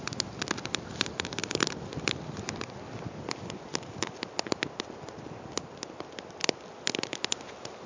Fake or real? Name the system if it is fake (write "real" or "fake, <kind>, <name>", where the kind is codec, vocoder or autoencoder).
real